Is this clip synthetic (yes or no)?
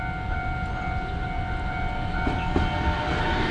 no